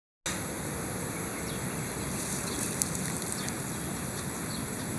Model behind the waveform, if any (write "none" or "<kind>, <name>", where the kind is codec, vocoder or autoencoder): none